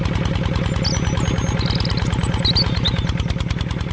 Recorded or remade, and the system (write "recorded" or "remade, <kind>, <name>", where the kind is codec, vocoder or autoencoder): recorded